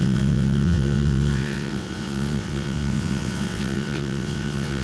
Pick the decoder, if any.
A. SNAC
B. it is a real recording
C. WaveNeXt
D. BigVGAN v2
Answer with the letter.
C